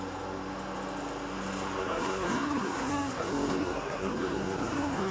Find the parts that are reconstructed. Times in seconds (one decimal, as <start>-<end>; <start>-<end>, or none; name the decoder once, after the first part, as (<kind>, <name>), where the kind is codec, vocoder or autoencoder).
1.8-5.1 (codec, SNAC)